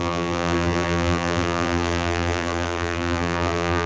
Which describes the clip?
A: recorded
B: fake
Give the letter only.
B